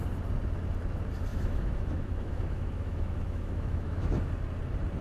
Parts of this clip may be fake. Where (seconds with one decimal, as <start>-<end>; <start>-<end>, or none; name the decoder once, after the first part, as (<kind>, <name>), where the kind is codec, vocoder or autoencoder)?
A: 1.3-4.3 (autoencoder, DAC-VAE)